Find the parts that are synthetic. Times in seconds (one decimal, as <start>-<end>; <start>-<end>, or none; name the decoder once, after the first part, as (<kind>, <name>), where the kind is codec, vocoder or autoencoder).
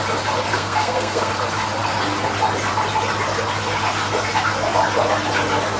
0.5-1.3 (codec, SNAC)